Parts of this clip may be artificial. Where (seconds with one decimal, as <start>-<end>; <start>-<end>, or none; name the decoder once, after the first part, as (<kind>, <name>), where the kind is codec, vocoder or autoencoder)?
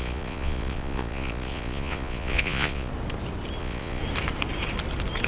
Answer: 0.0-2.9 (vocoder, Vocos); 3.6-4.0